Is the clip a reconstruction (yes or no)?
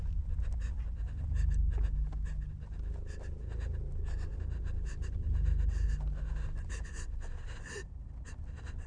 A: no